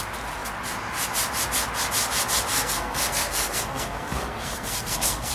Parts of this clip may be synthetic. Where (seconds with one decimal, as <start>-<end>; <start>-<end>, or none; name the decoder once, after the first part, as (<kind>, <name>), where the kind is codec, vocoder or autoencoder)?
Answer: 2.5-5.3 (codec, SNAC)